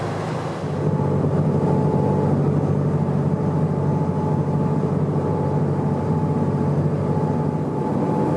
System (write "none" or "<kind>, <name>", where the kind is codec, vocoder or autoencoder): none